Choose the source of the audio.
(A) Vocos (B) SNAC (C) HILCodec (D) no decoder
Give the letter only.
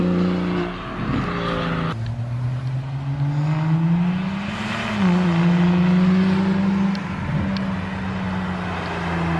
D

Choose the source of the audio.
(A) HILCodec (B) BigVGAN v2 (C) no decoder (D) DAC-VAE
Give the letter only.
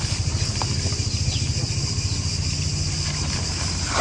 C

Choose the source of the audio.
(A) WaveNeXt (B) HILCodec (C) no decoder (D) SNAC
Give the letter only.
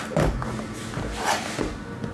C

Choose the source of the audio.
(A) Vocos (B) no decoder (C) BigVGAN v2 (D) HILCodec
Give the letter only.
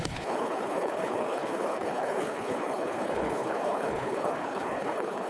D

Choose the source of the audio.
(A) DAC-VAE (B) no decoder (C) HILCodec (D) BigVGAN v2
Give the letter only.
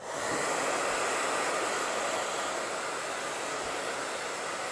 B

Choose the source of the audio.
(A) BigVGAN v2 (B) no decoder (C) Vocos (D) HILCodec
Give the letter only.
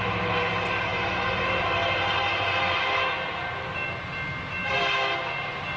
B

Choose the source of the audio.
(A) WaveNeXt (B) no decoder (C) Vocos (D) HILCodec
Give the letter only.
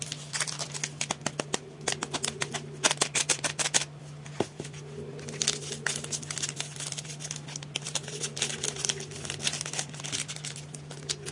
B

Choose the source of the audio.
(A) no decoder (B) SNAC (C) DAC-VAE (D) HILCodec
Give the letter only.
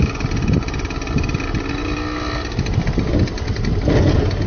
A